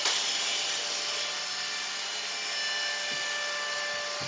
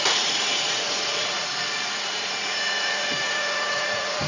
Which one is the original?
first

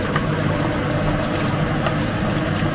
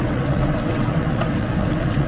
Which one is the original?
first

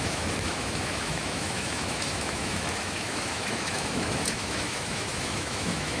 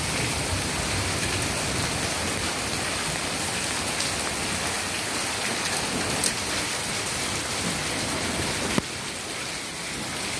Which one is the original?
second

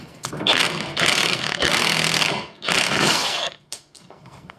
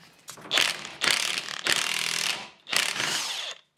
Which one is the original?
second